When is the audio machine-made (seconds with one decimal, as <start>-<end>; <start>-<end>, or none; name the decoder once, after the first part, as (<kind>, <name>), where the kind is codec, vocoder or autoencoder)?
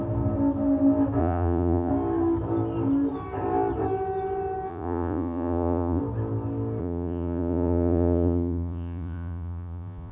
1.2-1.9 (vocoder, Vocos); 4.7-6.0; 6.8-10.1